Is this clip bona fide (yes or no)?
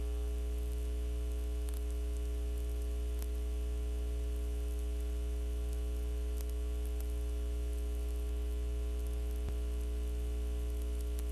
yes